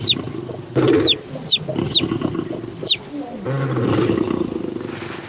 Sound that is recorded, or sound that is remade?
recorded